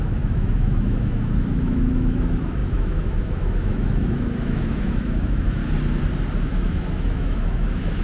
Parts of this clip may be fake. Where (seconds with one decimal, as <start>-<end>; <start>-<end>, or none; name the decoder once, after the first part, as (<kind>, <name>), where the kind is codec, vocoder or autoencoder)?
0.0-5.6 (autoencoder, DAC-VAE); 6.4-8.0